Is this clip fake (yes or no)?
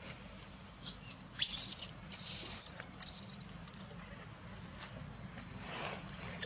no